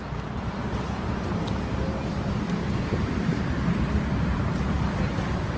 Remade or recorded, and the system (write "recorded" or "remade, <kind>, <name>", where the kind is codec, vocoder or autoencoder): recorded